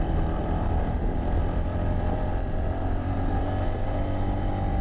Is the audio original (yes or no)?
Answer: no